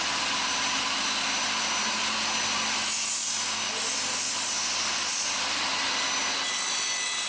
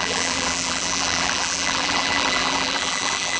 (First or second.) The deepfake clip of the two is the second